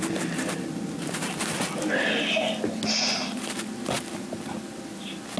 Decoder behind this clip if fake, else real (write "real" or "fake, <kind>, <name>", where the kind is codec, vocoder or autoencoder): real